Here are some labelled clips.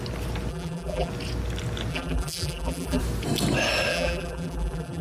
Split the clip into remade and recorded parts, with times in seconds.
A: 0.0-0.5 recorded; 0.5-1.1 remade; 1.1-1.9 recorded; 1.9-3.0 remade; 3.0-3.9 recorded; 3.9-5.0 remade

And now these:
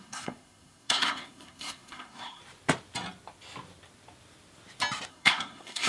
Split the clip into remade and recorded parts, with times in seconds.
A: 0.0-2.4 remade; 2.4-5.1 recorded; 5.1-5.9 remade

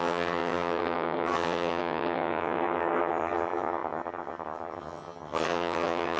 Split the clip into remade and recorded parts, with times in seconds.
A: 0.0-6.2 remade

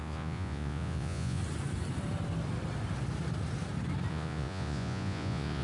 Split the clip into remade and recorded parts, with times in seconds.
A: 0.0-1.4 remade; 1.4-4.1 recorded; 4.1-5.6 remade

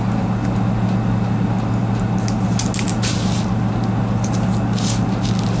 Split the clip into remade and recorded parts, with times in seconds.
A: 0.0-5.6 recorded

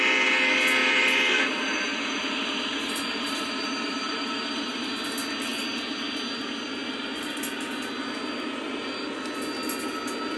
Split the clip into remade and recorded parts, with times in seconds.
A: 0.0-0.8 recorded; 0.8-4.9 remade; 4.9-10.4 recorded

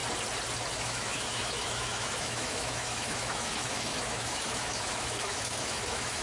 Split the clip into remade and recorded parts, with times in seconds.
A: 0.0-0.7 recorded; 0.7-6.2 remade